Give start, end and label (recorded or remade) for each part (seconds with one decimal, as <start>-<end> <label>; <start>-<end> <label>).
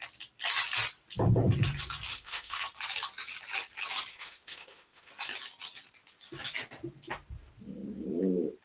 0.0-2.1 recorded; 2.1-2.6 remade; 2.6-4.1 recorded; 4.1-5.1 remade; 5.1-8.6 recorded